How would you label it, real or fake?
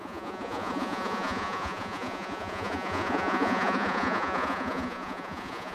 fake